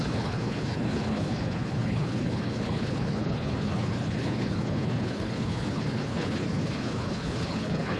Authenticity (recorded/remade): remade